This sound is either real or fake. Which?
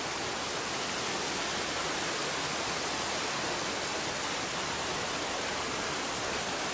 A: real